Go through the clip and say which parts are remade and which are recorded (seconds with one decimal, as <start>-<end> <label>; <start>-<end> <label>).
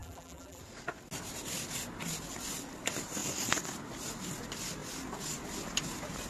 0.0-0.6 remade; 0.6-6.3 recorded